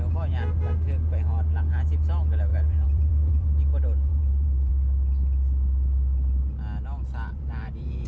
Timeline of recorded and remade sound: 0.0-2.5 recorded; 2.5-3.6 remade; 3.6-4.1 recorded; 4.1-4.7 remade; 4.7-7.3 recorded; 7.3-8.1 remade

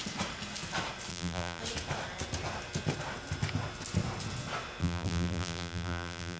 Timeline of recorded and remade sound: 0.0-1.1 recorded; 1.1-1.6 remade; 1.6-4.8 recorded; 4.8-6.4 remade

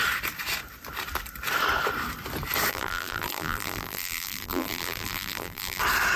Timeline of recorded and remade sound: 0.0-2.7 recorded; 2.7-5.8 remade; 5.8-6.2 recorded

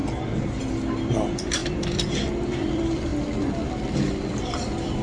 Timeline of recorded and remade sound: 0.0-0.6 recorded; 0.6-3.1 remade; 3.1-4.1 recorded; 4.1-5.0 remade

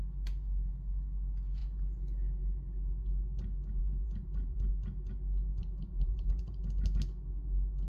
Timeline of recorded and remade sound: 0.0-3.8 recorded; 3.8-4.7 remade; 4.7-5.5 recorded; 5.5-6.6 remade; 6.6-7.9 recorded